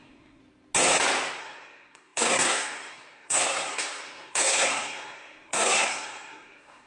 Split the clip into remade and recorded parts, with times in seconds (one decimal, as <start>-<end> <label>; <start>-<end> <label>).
0.0-0.4 remade; 0.4-1.4 recorded; 1.4-6.9 remade